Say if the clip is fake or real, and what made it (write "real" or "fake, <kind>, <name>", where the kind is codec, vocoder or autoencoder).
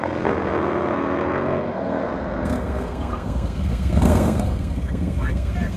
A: fake, codec, SNAC